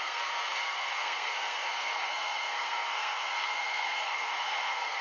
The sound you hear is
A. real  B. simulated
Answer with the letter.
B